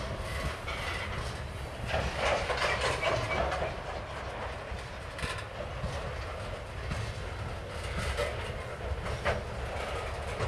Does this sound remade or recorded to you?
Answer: recorded